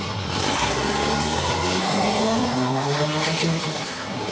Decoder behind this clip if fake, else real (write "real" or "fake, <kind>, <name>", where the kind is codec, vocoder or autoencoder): fake, codec, SNAC